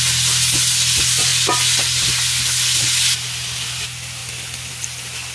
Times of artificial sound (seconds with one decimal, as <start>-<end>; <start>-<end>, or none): none

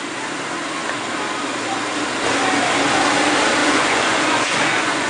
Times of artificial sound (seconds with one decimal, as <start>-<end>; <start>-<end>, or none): 3.6-5.1